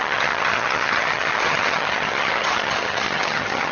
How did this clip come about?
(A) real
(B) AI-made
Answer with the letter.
B